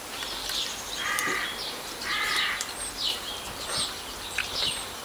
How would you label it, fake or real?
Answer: fake